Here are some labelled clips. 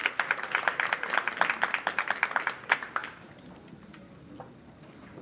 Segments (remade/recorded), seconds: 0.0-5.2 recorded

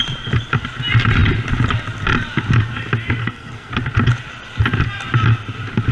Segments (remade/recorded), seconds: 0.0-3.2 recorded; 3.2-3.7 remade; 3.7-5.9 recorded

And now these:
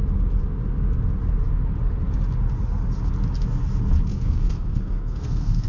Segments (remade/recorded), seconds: 0.0-4.1 recorded; 4.1-5.7 remade

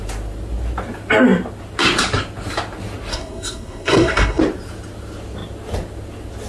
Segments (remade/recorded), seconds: 0.0-3.1 recorded; 3.1-4.4 remade; 4.4-6.5 recorded